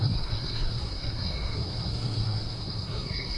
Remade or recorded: remade